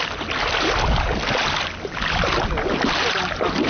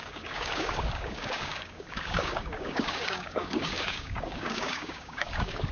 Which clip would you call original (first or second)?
first